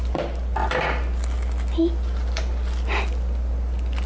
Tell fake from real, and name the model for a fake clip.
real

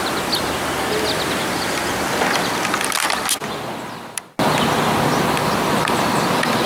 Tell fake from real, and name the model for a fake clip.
real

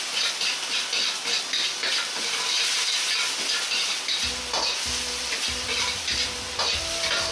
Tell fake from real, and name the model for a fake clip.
real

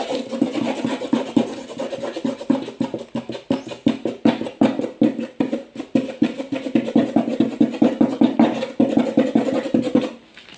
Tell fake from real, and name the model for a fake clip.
real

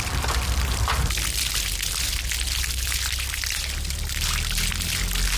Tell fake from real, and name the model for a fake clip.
real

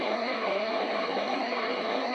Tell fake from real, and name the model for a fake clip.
fake, codec, SNAC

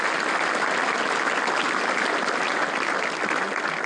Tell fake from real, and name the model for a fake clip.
real